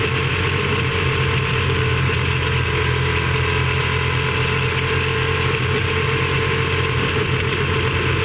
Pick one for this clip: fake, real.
real